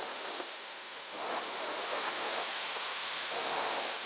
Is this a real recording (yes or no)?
no